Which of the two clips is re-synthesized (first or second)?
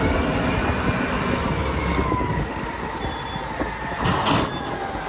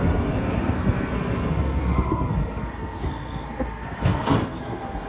second